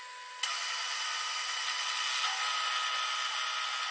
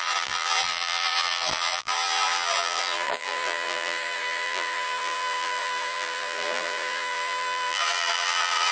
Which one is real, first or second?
first